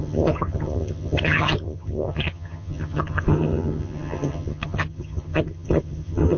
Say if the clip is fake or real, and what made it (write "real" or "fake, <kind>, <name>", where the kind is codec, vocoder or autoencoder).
fake, vocoder, HiFi-GAN